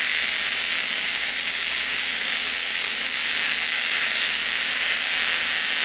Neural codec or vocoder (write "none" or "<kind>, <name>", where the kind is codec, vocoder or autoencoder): codec, DAC